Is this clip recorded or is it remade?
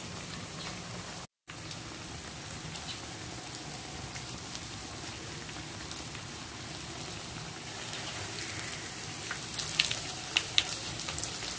recorded